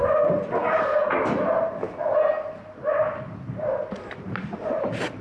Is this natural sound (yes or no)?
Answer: yes